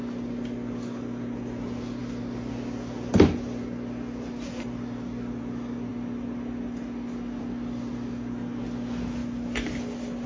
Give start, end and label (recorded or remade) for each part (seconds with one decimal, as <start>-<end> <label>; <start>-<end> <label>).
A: 0.0-10.3 recorded